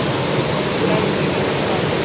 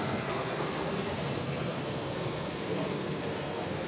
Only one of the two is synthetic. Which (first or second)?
second